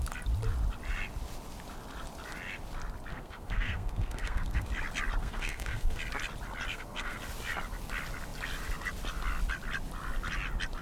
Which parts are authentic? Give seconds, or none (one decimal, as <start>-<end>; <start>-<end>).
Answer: 0.0-3.1; 4.7-5.2; 6.0-6.7; 7.2-10.8